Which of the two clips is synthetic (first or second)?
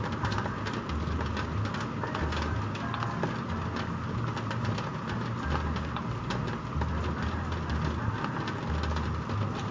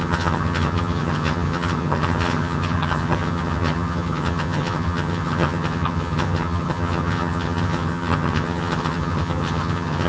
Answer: second